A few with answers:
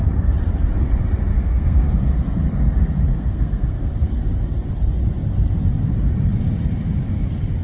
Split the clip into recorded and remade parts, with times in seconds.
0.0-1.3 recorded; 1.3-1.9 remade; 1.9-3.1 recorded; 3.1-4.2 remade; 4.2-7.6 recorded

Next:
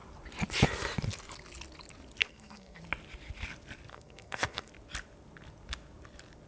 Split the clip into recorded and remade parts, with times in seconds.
0.0-2.2 recorded; 2.2-2.8 remade; 2.8-3.9 recorded; 3.9-4.7 remade; 4.7-6.5 recorded

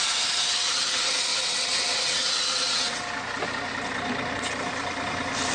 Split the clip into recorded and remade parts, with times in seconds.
0.0-1.3 recorded; 1.3-3.0 remade; 3.0-5.5 recorded

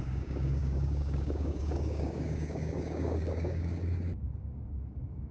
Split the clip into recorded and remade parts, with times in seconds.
0.0-5.3 remade